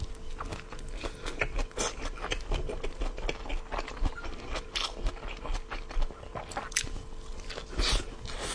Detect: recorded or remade recorded